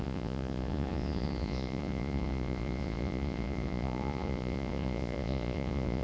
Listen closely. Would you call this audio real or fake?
fake